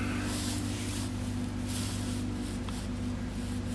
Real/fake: real